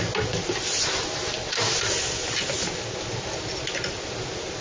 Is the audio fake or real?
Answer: real